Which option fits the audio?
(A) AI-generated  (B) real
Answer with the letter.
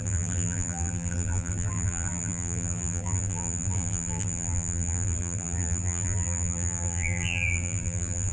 A